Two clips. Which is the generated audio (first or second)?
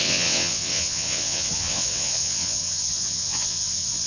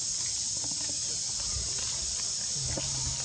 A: first